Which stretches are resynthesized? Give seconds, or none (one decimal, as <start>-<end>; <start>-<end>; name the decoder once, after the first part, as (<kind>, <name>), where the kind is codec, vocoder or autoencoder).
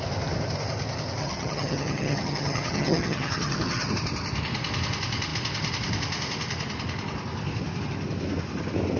1.2-3.9 (vocoder, HiFi-GAN)